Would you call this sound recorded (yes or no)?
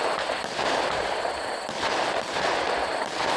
no